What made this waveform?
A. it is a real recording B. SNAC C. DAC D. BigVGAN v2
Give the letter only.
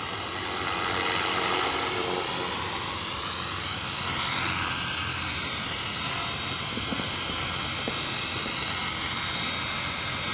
A